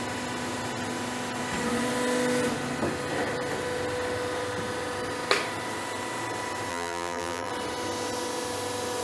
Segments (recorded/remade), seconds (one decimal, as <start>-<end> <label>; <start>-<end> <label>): 0.0-6.7 recorded; 6.7-7.5 remade; 7.5-9.0 recorded